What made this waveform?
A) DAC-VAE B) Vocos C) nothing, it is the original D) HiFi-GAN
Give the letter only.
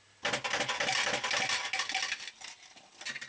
C